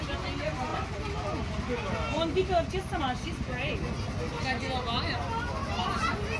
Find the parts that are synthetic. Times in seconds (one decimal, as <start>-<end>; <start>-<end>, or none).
none